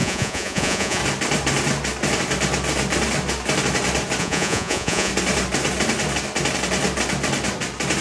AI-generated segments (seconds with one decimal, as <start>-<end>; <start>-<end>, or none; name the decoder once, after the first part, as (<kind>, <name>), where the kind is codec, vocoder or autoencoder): 0.0-1.0 (vocoder, Vocos); 4.2-5.1